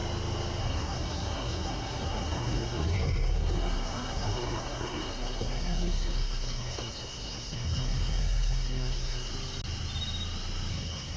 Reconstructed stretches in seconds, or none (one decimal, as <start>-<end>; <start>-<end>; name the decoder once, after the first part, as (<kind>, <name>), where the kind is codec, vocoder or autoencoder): 0.6-9.3 (codec, SNAC); 10.7-11.2